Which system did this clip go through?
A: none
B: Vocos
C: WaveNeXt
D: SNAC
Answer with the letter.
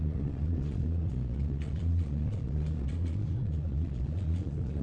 B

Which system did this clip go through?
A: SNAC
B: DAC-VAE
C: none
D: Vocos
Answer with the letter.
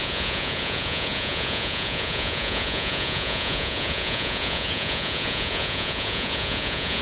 D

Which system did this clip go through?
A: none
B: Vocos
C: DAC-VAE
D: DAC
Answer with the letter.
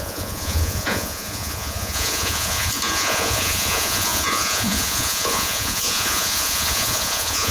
B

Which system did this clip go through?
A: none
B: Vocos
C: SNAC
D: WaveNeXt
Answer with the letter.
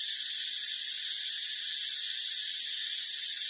A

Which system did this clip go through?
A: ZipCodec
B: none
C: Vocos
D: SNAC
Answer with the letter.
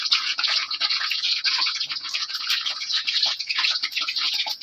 C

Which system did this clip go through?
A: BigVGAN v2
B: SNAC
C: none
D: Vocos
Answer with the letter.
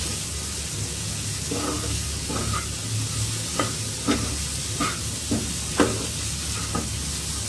C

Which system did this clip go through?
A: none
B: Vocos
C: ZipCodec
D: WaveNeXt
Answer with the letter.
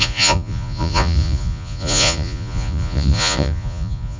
B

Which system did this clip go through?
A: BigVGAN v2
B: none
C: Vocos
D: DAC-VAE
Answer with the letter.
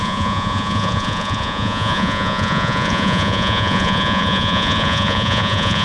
C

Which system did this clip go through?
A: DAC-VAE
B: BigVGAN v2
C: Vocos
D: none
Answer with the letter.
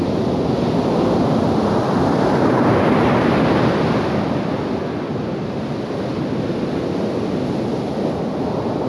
D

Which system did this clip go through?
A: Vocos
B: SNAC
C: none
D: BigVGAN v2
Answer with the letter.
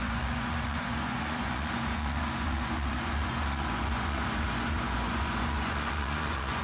A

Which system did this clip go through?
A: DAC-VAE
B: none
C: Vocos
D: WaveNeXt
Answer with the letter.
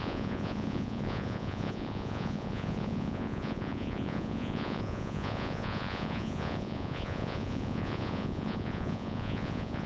C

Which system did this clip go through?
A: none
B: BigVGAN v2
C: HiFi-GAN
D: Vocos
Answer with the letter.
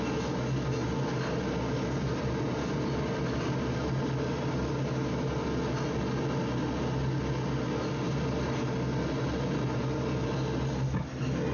A